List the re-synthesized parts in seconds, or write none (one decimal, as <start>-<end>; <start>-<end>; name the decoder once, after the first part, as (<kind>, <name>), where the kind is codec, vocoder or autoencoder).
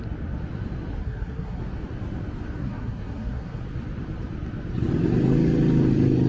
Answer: 1.0-1.6 (codec, SNAC); 2.6-3.6